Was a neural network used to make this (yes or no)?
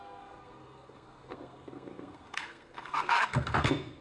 yes